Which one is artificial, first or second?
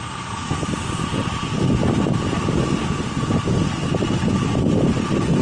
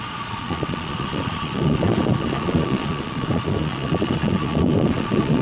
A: second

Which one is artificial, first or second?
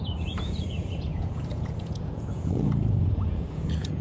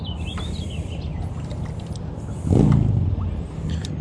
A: first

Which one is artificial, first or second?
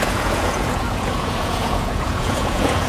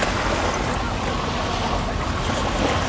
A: first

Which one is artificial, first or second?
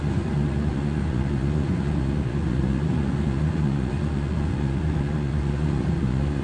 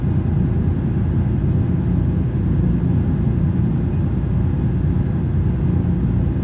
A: first